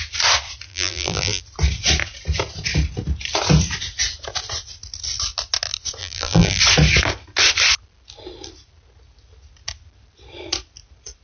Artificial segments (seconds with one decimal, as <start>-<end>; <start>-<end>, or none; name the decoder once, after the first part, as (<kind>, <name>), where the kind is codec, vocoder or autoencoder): 0.7-1.4 (vocoder, BigVGAN v2); 6.0-6.6